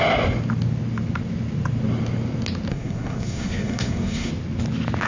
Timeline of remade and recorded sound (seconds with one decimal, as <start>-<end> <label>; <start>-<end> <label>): 0.0-2.7 recorded; 2.7-4.3 remade; 4.3-5.1 recorded